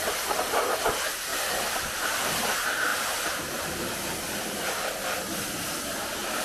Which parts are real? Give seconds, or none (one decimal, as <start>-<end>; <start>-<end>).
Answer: none